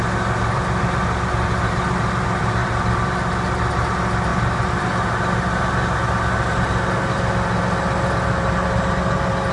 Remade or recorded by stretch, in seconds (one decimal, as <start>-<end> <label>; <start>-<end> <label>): 0.0-4.3 recorded; 4.3-4.9 remade; 4.9-9.5 recorded